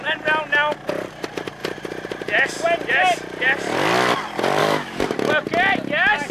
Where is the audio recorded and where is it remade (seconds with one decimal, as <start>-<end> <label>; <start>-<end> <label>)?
0.0-4.6 recorded; 4.6-5.3 remade; 5.3-6.3 recorded